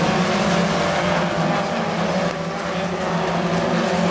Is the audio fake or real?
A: real